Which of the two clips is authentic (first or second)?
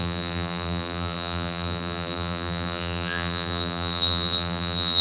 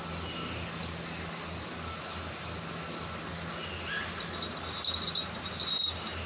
second